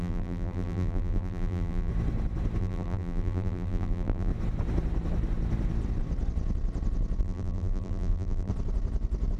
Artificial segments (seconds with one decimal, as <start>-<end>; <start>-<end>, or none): 0.0-1.9; 2.6-4.3; 7.2-8.5